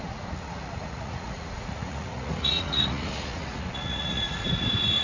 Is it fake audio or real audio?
fake